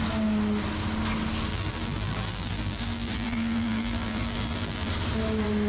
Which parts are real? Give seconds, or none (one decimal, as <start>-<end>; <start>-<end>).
0.0-1.5; 4.9-5.7